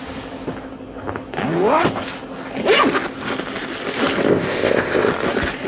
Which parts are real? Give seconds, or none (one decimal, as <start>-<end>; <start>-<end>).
0.0-4.3; 5.1-5.7